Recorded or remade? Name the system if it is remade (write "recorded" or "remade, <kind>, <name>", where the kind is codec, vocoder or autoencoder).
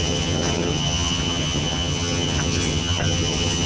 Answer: remade, vocoder, HiFi-GAN